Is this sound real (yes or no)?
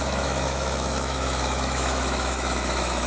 no